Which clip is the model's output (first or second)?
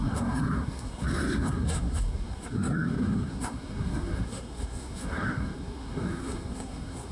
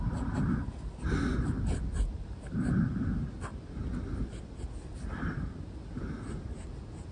first